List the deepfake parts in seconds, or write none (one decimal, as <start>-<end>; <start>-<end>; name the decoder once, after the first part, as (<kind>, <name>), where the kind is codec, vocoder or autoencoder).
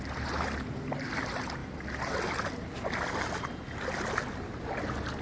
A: none